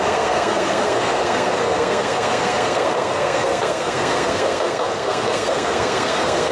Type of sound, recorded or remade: remade